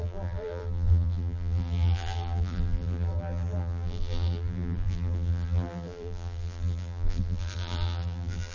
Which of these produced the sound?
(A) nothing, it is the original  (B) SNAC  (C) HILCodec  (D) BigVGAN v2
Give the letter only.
D